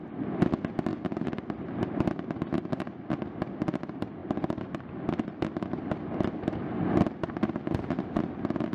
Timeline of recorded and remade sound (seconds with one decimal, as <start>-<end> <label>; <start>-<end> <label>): 0.0-0.9 recorded; 0.9-1.9 remade; 1.9-8.7 recorded

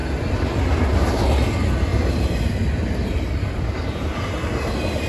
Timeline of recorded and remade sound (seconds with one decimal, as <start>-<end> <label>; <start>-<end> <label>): 0.0-1.9 recorded; 1.9-4.2 remade; 4.2-5.1 recorded

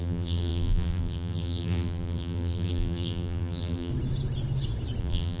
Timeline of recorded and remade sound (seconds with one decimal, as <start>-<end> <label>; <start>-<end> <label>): 0.0-3.9 remade; 3.9-5.0 recorded; 5.0-5.4 remade

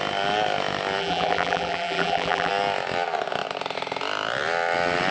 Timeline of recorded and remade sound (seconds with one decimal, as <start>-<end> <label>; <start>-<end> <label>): 0.0-1.0 recorded; 1.0-2.5 remade; 2.5-5.1 recorded